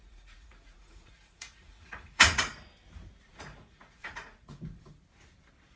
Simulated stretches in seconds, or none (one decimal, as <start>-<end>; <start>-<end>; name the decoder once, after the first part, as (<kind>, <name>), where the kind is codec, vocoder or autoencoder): 0.0-2.4 (vocoder, Vocos); 3.3-5.0